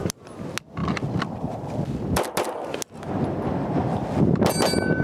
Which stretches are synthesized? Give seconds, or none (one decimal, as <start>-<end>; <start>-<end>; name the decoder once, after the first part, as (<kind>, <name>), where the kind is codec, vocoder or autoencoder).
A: none

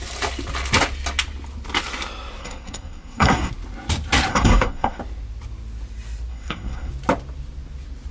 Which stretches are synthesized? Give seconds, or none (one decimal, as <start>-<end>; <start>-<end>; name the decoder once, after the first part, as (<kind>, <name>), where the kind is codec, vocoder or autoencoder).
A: 2.4-3.5 (codec, SNAC); 4.3-5.0; 6.3-6.9

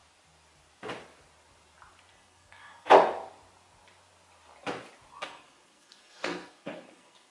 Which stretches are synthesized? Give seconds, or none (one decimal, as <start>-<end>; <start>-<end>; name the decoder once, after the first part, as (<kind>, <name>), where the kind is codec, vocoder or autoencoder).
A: 2.1-2.9 (codec, SNAC); 5.2-7.3

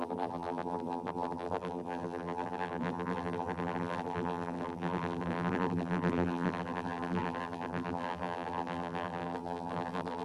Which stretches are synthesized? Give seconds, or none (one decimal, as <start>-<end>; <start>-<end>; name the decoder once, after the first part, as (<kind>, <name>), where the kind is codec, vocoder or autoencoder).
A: 0.0-10.2 (vocoder, BigVGAN v2)

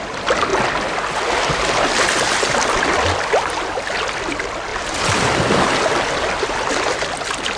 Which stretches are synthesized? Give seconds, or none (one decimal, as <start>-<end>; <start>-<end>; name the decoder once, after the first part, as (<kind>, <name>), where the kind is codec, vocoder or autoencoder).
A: none

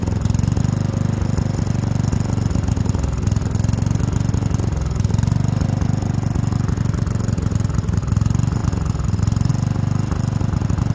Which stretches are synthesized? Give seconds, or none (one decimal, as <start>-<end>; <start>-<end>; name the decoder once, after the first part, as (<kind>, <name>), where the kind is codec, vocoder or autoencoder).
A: none

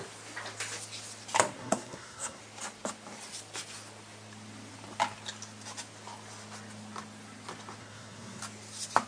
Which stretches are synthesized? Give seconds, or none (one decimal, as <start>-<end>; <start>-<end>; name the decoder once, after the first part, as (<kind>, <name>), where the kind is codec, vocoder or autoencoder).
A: 1.6-2.4 (codec, SNAC); 7.8-8.4